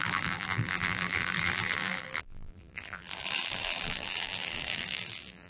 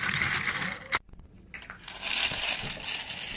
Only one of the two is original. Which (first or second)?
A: second